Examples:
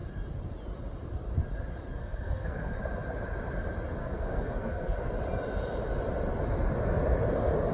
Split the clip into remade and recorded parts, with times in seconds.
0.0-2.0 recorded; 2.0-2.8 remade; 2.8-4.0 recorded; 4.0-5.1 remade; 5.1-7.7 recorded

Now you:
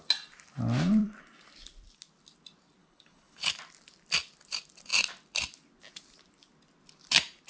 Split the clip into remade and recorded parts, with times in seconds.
0.0-2.8 recorded; 2.8-3.5 remade; 3.5-7.5 recorded

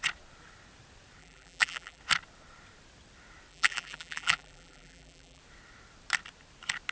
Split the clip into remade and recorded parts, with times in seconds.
0.0-1.2 recorded; 1.2-2.0 remade; 2.0-3.5 recorded; 3.5-5.4 remade; 5.4-6.9 recorded

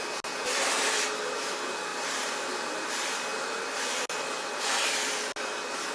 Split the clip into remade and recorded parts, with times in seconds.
0.0-1.9 recorded; 1.9-2.9 remade; 2.9-5.9 recorded

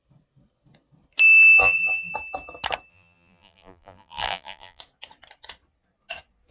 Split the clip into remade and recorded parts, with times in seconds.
0.0-1.6 recorded; 1.6-2.1 remade; 2.1-2.9 recorded; 2.9-4.8 remade; 4.8-6.5 recorded

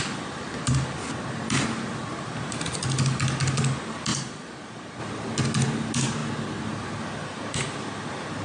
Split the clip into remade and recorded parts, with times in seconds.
0.0-2.1 recorded; 2.1-2.8 remade; 2.8-4.1 recorded; 4.1-5.0 remade; 5.0-8.4 recorded